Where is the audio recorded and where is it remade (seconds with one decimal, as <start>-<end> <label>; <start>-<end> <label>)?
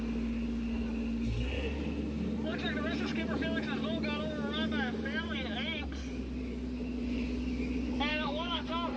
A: 0.0-8.1 recorded; 8.1-8.6 remade; 8.6-9.0 recorded